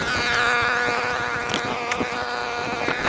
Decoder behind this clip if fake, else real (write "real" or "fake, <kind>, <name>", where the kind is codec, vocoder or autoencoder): real